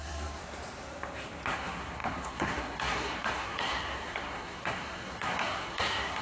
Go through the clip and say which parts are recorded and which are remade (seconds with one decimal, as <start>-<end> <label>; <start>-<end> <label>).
0.0-0.4 remade; 0.4-1.5 recorded; 1.5-6.2 remade